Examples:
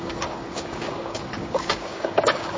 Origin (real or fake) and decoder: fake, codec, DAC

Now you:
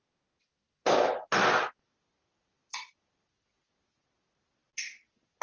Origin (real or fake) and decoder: real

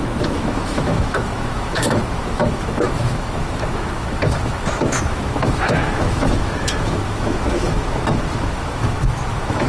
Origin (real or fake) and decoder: fake, autoencoder, DAC-VAE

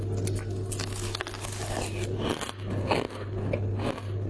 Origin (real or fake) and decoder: real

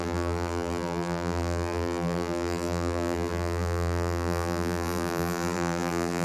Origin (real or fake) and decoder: fake, vocoder, BigVGAN v2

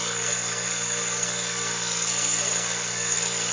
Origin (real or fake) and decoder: fake, codec, SNAC